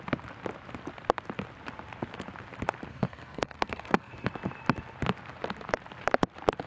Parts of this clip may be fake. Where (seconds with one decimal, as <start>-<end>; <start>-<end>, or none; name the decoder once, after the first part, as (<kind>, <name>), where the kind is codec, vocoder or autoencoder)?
2.9-4.3 (codec, SNAC)